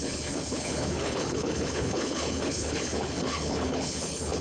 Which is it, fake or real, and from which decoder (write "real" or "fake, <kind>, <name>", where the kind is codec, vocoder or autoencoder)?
fake, codec, HILCodec